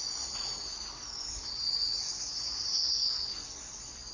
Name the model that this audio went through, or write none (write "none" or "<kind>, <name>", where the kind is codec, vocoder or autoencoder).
none